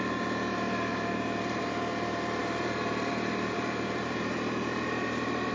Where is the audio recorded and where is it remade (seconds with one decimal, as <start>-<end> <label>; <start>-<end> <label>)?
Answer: 0.0-5.5 remade